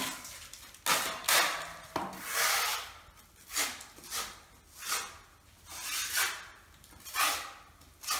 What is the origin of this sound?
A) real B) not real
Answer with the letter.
A